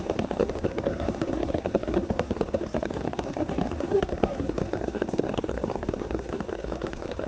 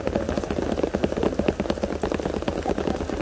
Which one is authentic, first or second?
second